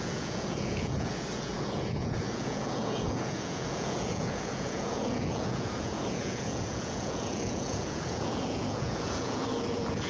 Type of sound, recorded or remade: remade